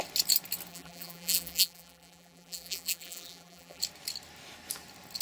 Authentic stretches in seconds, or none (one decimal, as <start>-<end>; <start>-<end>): 0.0-0.7; 3.8-5.2